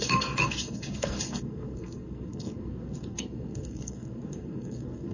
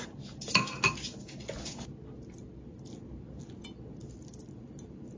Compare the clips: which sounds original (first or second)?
second